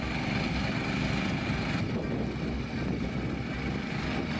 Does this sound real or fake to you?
real